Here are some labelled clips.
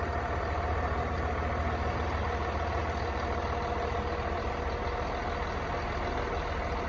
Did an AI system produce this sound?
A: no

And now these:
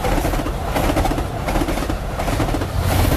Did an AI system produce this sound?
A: no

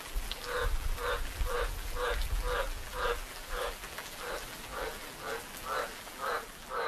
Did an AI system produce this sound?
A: yes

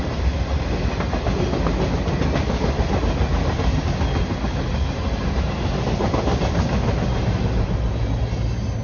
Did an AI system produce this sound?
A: no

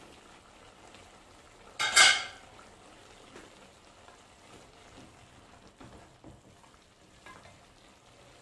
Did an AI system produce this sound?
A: no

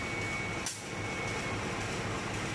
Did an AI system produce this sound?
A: no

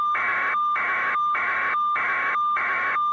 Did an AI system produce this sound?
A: yes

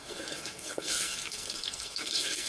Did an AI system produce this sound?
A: yes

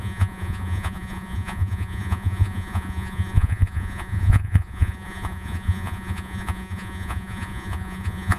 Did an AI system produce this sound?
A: yes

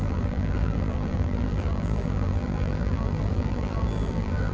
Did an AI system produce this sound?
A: yes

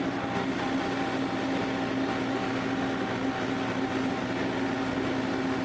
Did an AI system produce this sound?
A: no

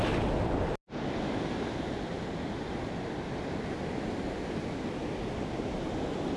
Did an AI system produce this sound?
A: no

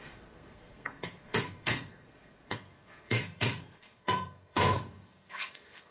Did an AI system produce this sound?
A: yes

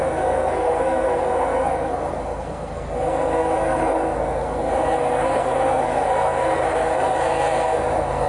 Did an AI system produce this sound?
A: yes